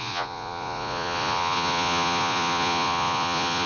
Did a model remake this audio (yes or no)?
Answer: yes